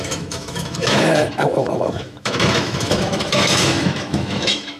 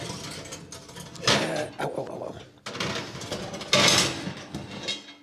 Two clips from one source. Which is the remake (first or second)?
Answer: first